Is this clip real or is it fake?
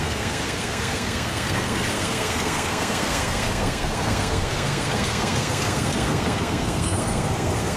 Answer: fake